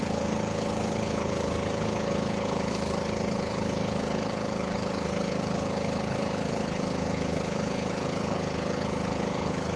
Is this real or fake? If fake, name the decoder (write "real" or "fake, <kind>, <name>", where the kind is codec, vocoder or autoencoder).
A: fake, codec, HILCodec